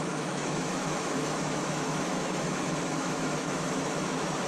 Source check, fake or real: fake